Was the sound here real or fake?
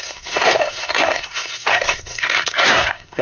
fake